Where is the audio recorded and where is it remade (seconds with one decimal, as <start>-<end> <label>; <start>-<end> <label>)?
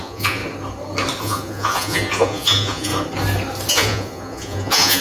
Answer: 0.0-0.4 remade; 0.4-1.2 recorded; 1.2-2.9 remade; 2.9-3.7 recorded; 3.7-5.0 remade